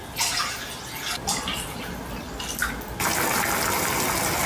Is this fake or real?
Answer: real